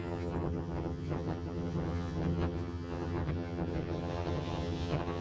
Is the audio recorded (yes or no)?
no